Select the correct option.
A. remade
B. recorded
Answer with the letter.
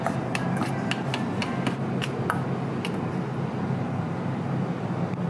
B